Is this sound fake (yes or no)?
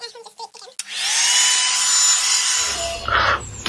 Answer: no